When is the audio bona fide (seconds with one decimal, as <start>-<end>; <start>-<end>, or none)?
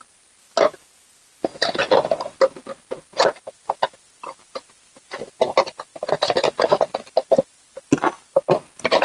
0.0-1.5; 2.1-2.6; 3.6-5.9; 6.9-9.0